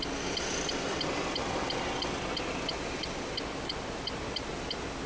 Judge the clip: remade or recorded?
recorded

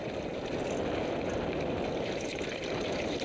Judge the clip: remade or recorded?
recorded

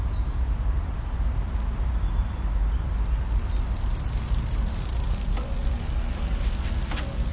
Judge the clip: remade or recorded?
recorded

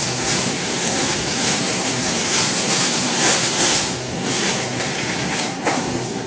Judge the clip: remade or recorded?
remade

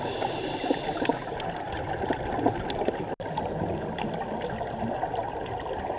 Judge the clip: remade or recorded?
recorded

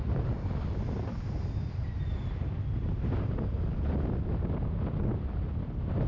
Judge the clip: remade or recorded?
recorded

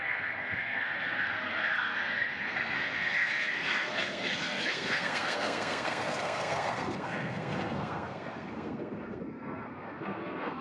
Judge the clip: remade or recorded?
remade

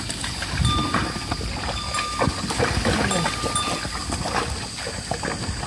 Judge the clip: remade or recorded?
recorded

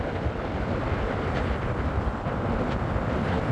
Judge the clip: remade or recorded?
recorded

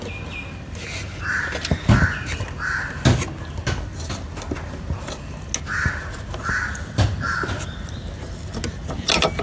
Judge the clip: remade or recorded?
recorded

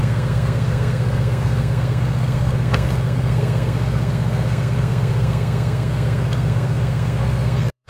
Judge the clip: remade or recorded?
remade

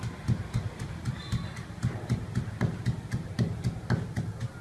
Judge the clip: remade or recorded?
recorded